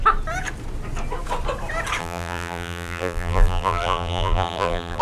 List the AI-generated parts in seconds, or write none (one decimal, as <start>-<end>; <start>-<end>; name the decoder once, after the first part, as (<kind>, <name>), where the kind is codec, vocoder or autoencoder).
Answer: 2.0-5.0 (vocoder, BigVGAN v2)